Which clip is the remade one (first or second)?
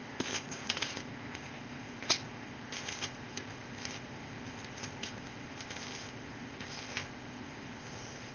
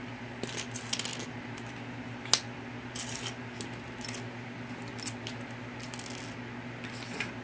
first